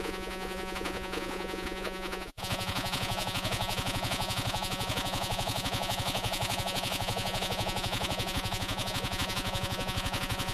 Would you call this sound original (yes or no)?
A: no